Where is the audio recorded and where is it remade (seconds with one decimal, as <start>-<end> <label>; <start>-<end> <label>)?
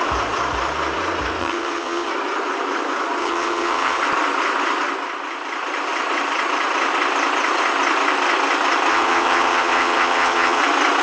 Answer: 0.0-1.4 recorded; 1.4-2.1 remade; 2.1-3.2 recorded; 3.2-4.0 remade; 4.0-8.9 recorded; 8.9-10.6 remade; 10.6-11.0 recorded